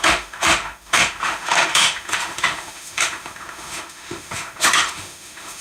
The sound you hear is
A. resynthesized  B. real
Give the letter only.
A